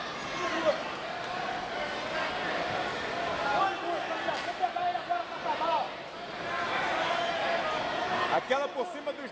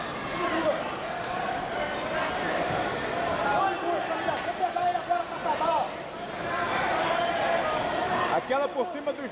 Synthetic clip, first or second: second